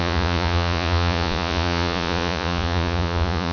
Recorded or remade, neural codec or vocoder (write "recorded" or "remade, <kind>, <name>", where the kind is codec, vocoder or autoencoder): remade, vocoder, Vocos